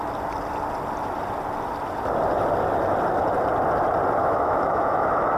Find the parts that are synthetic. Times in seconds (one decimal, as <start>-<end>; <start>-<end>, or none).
4.2-5.4